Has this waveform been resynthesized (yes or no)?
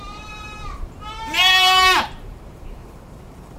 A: yes